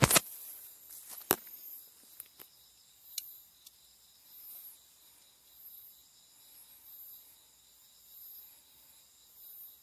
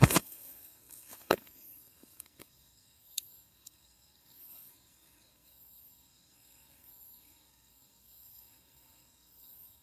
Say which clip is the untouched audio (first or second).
first